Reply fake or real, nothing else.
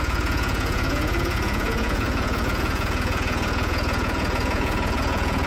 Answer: fake